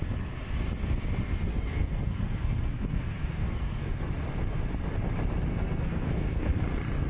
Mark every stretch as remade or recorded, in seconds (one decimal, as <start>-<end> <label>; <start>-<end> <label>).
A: 0.0-1.5 recorded; 1.5-4.0 remade; 4.0-5.5 recorded; 5.5-6.6 remade; 6.6-7.1 recorded